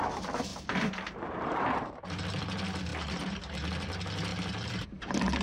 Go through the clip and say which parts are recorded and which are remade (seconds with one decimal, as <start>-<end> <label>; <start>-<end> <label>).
0.0-0.5 recorded; 0.5-2.0 remade; 2.0-2.9 recorded; 2.9-3.4 remade; 3.4-4.3 recorded; 4.3-5.0 remade; 5.0-5.4 recorded